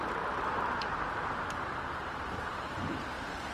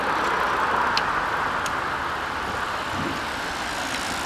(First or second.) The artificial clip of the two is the first